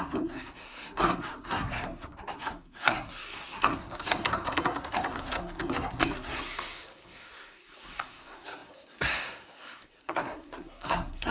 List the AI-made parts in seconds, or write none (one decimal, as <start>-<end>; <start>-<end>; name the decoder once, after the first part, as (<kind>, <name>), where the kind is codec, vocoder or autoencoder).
0.0-11.3 (codec, SNAC)